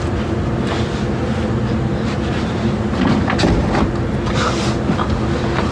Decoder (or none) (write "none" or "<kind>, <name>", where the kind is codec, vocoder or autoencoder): none